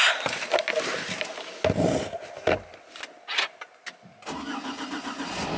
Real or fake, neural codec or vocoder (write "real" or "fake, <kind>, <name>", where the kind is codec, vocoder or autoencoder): real